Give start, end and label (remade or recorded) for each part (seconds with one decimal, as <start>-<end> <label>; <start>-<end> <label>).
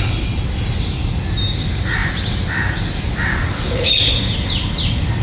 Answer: 0.0-5.2 recorded